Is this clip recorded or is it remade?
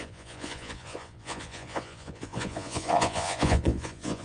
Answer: remade